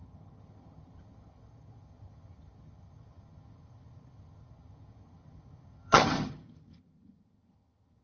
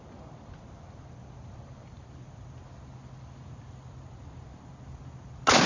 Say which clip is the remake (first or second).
first